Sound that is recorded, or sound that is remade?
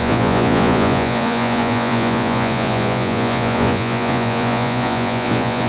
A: remade